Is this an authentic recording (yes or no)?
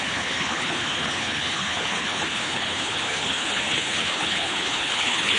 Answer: no